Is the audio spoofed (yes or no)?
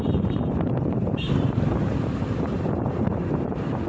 yes